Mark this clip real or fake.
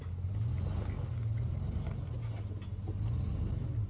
real